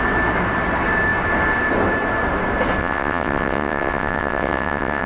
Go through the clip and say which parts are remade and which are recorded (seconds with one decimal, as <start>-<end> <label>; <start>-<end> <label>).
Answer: 0.0-2.8 recorded; 2.8-5.1 remade